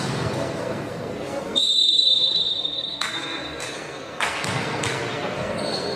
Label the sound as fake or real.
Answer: fake